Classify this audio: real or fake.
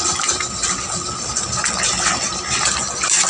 real